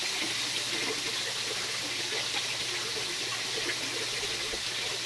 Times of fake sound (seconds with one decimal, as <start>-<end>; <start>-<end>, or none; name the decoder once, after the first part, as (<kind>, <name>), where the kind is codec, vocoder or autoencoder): none